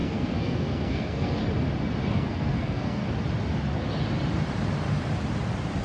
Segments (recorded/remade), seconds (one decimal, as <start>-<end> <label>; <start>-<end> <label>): 0.0-1.4 remade; 1.4-2.1 recorded; 2.1-3.0 remade; 3.0-5.8 recorded